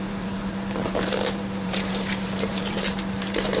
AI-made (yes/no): yes